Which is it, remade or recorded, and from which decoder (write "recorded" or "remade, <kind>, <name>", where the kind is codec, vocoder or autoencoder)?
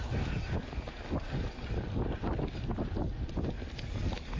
recorded